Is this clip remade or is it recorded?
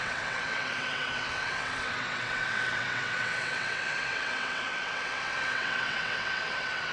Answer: remade